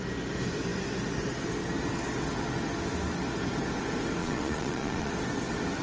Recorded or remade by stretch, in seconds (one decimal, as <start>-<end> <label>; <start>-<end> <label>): 0.0-4.2 recorded; 4.2-5.1 remade; 5.1-5.8 recorded